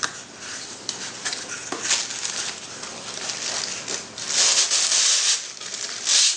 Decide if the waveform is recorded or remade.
recorded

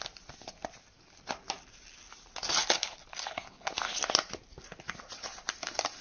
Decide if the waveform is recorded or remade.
recorded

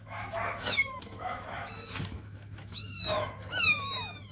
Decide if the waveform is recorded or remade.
remade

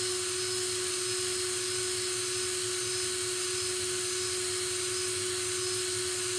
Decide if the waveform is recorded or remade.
recorded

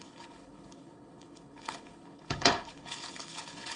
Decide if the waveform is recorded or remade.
remade